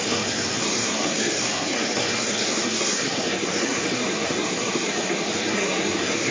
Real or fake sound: fake